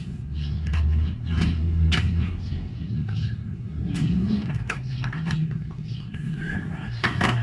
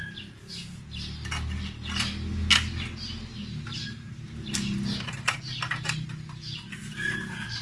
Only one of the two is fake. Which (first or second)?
first